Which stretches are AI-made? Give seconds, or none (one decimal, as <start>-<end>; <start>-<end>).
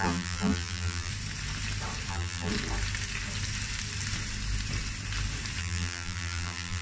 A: 0.0-1.1; 2.1-2.5; 5.6-6.8